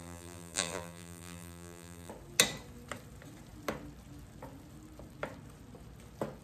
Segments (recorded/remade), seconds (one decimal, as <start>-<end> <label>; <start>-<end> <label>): 0.0-2.1 remade; 2.1-6.4 recorded

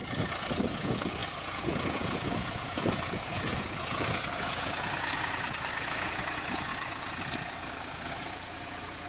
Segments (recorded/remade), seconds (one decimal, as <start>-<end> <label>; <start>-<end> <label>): 0.0-0.6 recorded; 0.6-9.1 remade

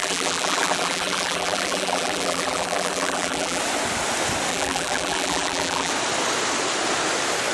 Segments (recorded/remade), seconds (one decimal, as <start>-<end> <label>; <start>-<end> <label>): 0.0-3.6 remade; 3.6-4.5 recorded; 4.5-5.9 remade; 5.9-7.5 recorded

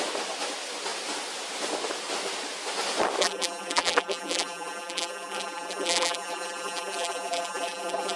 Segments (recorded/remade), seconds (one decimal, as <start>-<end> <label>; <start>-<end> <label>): 0.0-3.2 recorded; 3.2-8.2 remade

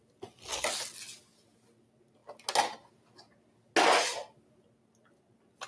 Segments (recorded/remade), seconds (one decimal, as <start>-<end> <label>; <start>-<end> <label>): 0.0-5.7 recorded

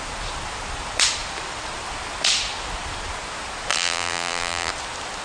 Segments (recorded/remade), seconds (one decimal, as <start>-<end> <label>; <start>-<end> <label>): 0.0-3.7 recorded; 3.7-4.7 remade; 4.7-5.2 recorded

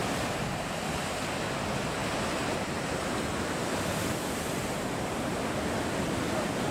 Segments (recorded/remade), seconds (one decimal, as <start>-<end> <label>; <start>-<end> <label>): 0.0-2.0 recorded; 2.0-4.2 remade; 4.2-6.7 recorded